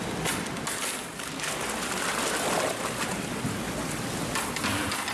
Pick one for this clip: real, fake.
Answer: real